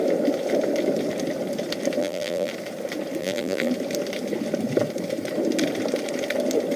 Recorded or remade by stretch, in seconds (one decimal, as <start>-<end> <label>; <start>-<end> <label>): 0.0-2.0 recorded; 2.0-2.5 remade; 2.5-3.2 recorded; 3.2-3.7 remade; 3.7-6.8 recorded